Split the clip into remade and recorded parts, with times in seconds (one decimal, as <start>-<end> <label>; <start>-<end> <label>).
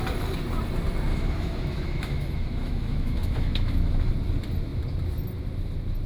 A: 0.0-1.1 recorded; 1.1-4.1 remade; 4.1-6.1 recorded